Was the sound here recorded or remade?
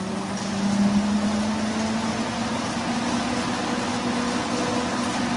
recorded